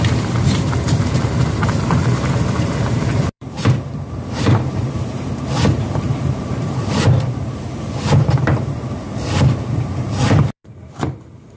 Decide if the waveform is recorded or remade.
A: remade